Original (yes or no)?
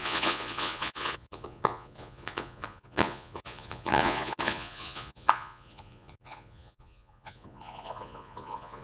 no